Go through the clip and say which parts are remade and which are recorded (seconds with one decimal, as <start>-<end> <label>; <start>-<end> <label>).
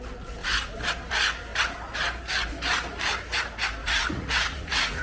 0.0-3.8 recorded; 3.8-5.0 remade